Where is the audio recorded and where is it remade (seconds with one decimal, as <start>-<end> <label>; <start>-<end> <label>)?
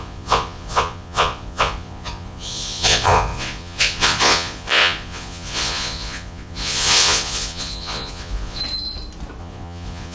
0.0-8.6 remade; 8.6-9.4 recorded; 9.4-10.1 remade